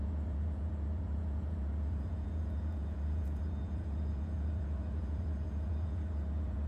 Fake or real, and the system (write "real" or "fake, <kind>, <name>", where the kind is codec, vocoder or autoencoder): fake, vocoder, Vocos